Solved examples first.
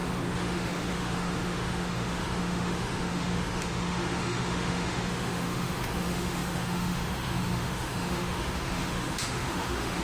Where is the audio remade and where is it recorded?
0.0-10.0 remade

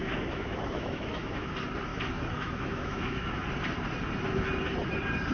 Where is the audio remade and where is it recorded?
0.0-1.5 remade; 1.5-1.9 recorded; 1.9-3.4 remade; 3.4-5.3 recorded